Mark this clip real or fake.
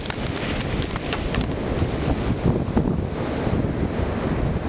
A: real